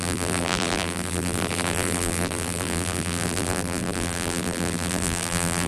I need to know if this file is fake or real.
fake